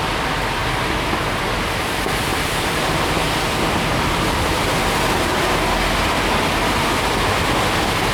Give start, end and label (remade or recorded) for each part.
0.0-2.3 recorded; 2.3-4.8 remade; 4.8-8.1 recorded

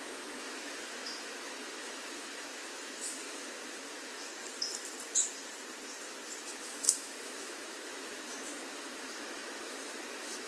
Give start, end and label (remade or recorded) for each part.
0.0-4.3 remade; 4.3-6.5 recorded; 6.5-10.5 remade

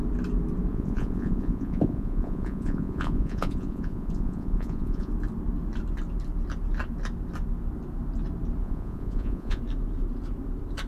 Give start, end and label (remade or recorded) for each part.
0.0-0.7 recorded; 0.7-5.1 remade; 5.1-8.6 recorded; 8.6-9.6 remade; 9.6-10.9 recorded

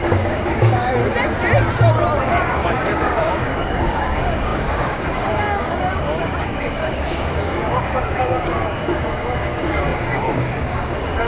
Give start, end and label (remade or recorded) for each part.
0.0-1.0 remade; 1.0-2.2 recorded; 2.2-11.3 remade

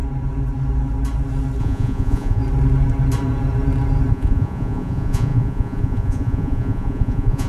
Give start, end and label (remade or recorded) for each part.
0.0-1.6 recorded; 1.6-2.4 remade; 2.4-4.1 recorded; 4.1-7.5 remade

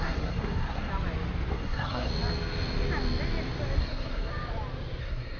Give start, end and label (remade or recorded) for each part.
0.0-0.9 remade; 0.9-1.5 recorded; 1.5-2.1 remade; 2.1-3.8 recorded; 3.8-4.3 remade; 4.3-5.0 recorded; 5.0-5.4 remade

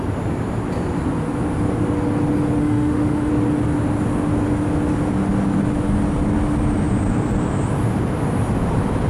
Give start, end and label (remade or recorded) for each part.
0.0-2.6 recorded; 2.6-3.3 remade; 3.3-9.1 recorded